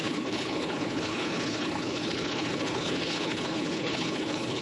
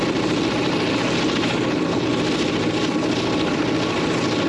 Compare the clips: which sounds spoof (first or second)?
first